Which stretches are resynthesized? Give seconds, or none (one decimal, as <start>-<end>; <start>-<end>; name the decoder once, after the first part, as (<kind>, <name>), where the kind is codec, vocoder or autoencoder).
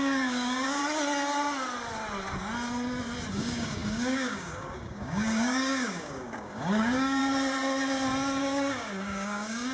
0.0-0.8 (codec, DAC); 3.3-7.2; 8.4-9.7